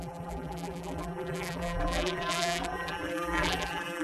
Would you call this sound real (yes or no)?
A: no